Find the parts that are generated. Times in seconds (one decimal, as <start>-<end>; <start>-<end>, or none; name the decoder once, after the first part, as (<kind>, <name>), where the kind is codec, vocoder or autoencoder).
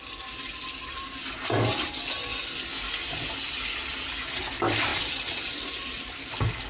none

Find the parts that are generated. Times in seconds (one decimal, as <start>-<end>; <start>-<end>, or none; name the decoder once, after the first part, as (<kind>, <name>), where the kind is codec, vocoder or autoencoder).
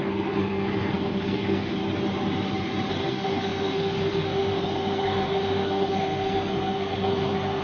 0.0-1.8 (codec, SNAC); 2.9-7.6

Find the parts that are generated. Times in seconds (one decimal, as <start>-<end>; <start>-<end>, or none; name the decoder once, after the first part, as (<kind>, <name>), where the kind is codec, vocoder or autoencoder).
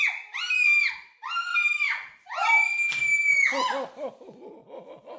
none